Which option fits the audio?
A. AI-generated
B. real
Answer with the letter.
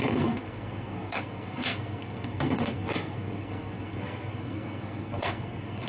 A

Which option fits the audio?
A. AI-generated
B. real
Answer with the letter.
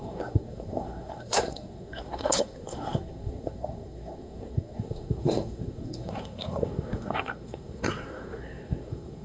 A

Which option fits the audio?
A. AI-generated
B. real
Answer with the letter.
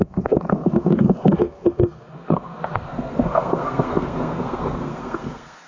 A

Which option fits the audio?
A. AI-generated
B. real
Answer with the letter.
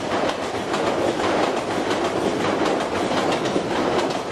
B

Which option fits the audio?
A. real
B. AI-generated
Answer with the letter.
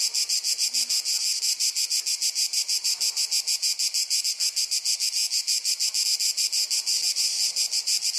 A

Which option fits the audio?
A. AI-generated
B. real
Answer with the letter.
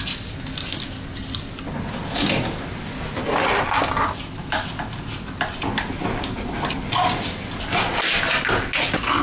B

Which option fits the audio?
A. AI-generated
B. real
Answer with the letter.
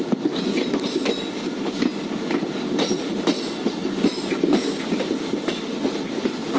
B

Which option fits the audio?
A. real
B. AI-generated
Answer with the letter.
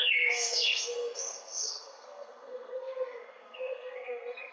B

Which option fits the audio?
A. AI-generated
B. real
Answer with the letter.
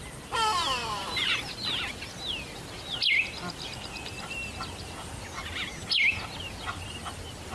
B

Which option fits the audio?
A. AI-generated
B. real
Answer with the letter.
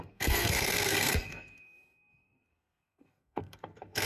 A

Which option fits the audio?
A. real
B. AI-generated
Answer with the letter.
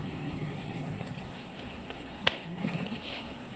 B